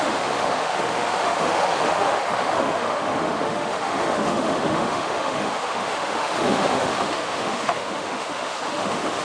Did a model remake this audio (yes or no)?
yes